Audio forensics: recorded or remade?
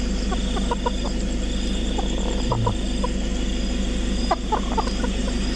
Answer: recorded